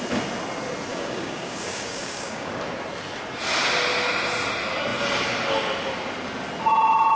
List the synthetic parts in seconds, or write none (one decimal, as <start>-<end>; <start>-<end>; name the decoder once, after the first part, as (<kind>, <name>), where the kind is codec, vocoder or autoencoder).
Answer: 0.9-2.5 (codec, DAC)